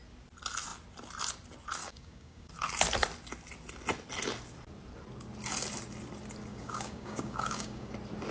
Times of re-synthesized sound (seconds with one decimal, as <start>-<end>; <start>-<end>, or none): 1.8-2.5; 6.5-7.9